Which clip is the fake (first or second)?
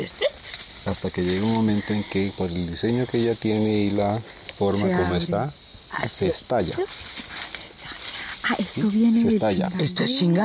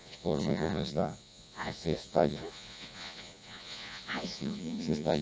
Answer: second